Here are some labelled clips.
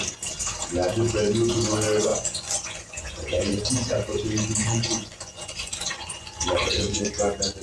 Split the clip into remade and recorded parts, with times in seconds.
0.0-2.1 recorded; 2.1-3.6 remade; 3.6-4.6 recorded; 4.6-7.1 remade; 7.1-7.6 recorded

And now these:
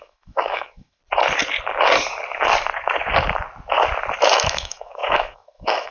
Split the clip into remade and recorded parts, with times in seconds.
0.0-1.0 remade; 1.0-4.3 recorded; 4.3-5.9 remade

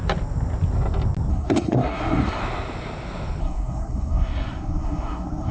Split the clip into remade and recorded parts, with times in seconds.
0.0-1.3 recorded; 1.3-2.4 remade; 2.4-3.4 recorded; 3.4-5.5 remade

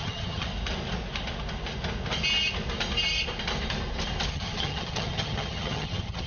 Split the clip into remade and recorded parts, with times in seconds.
0.0-0.5 remade; 0.5-4.3 recorded; 4.3-6.3 remade

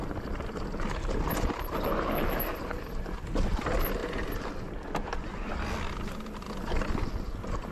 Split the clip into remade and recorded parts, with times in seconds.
0.0-1.3 recorded; 1.3-3.1 remade; 3.1-7.7 recorded